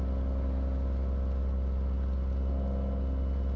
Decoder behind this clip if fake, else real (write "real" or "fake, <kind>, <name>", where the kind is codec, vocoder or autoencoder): real